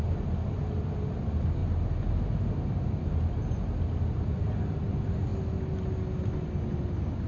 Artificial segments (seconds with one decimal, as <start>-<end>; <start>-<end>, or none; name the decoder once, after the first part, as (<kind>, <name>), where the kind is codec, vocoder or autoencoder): none